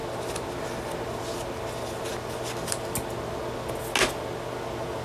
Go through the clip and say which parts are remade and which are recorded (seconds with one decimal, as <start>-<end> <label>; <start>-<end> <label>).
0.0-5.0 recorded